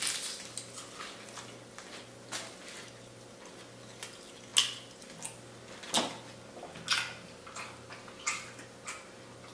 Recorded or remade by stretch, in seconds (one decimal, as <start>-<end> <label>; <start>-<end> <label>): 0.0-9.5 recorded

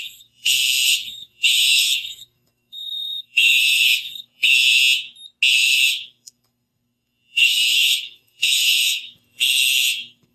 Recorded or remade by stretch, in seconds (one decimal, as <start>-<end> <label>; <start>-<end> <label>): 0.0-4.8 remade; 4.8-5.5 recorded; 5.5-10.3 remade

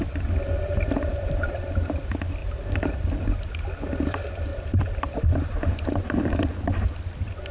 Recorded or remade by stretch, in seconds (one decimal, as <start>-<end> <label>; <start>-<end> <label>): 0.0-1.1 recorded; 1.1-2.0 remade; 2.0-2.4 recorded; 2.4-3.6 remade; 3.6-4.5 recorded; 4.5-6.5 remade; 6.5-7.5 recorded

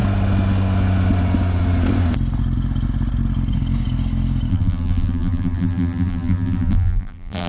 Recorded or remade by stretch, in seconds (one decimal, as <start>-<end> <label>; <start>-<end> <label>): 0.0-4.5 recorded; 4.5-7.5 remade

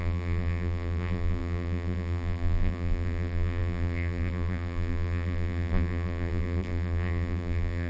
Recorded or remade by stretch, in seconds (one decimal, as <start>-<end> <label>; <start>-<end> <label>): 0.0-7.9 remade

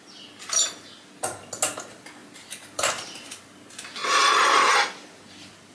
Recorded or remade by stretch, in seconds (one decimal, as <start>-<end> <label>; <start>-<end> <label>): 0.0-2.2 recorded; 2.2-3.4 remade; 3.4-4.0 recorded; 4.0-4.7 remade; 4.7-5.7 recorded

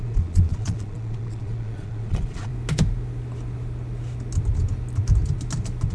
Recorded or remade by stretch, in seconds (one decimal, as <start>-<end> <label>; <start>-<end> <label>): 0.0-2.5 remade; 2.5-5.9 recorded

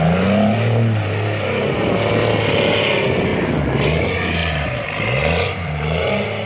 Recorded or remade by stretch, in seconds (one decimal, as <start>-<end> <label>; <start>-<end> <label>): 0.0-4.4 recorded; 4.4-6.1 remade; 6.1-6.5 recorded